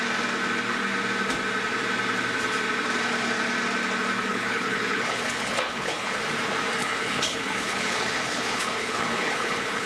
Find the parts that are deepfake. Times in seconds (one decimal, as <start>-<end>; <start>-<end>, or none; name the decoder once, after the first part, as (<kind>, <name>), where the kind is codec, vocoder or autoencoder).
4.3-6.2 (codec, HILCodec); 6.8-9.9